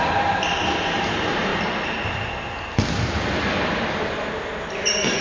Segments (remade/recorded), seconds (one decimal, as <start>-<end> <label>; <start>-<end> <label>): 0.0-1.5 remade; 1.5-4.6 recorded; 4.6-5.2 remade